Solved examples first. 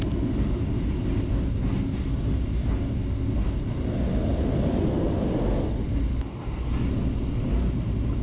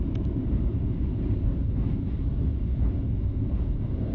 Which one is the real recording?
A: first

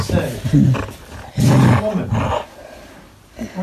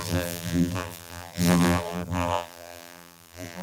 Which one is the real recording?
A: first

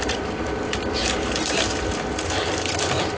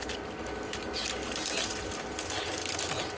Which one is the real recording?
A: second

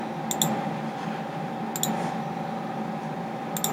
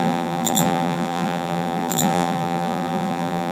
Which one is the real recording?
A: first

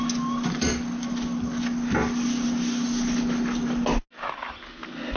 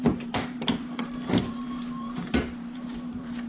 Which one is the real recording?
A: first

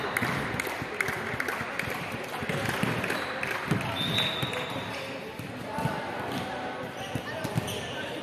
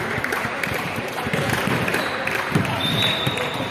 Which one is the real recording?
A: first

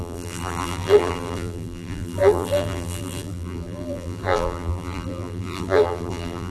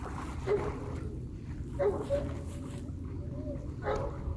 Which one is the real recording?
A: second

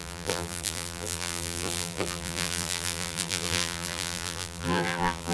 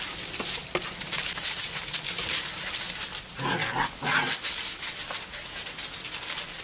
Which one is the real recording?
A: second